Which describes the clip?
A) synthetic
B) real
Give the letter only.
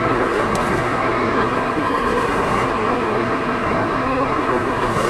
A